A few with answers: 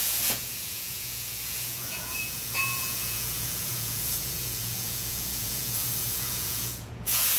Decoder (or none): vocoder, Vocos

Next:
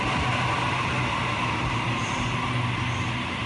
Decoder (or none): none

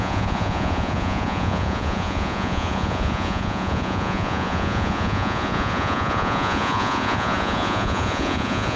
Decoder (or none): vocoder, Vocos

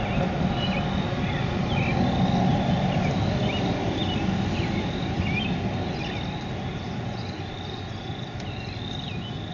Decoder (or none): none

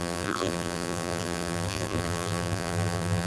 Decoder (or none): vocoder, BigVGAN v2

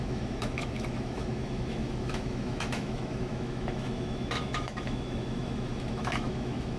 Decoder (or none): autoencoder, DAC-VAE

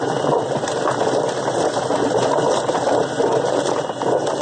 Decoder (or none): vocoder, BigVGAN v2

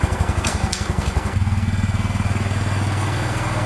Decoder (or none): codec, SNAC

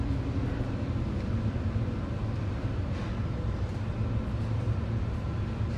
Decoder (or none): none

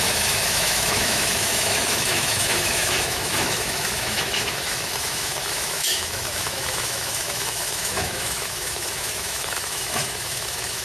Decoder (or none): autoencoder, DAC-VAE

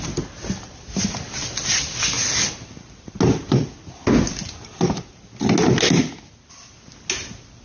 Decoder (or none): none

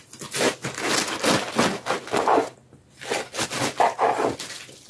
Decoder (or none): none